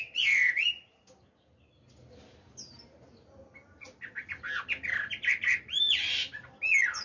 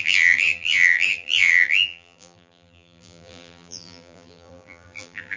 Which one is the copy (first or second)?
second